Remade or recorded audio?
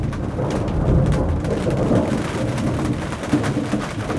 recorded